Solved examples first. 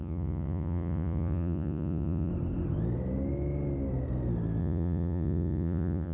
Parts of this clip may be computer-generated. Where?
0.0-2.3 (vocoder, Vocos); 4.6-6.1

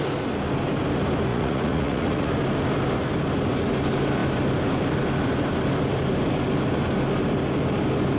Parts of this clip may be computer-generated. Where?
1.3-2.3 (vocoder, Vocos)